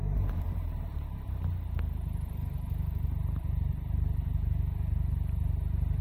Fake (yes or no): yes